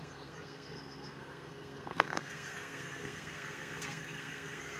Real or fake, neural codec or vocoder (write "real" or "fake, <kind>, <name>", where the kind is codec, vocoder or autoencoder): fake, codec, SNAC